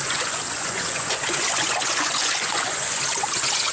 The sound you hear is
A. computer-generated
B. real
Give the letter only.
A